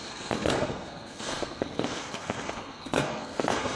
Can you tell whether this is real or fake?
fake